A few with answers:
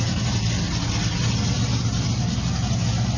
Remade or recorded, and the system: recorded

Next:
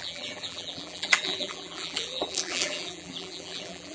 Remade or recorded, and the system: remade, vocoder, BigVGAN v2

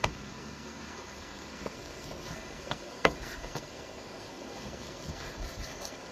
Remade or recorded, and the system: remade, codec, SNAC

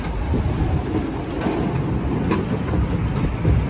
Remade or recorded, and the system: recorded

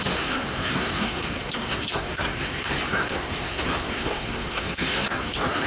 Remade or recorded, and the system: remade, codec, SNAC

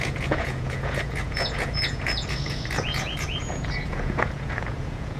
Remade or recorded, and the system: remade, vocoder, Vocos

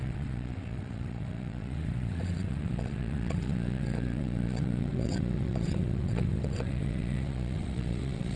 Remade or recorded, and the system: remade, vocoder, WaveNeXt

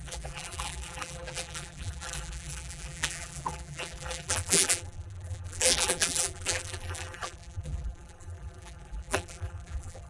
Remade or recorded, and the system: remade, vocoder, BigVGAN v2